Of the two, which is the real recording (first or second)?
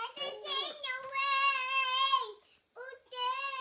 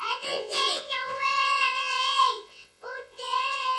first